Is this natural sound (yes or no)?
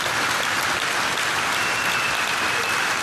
yes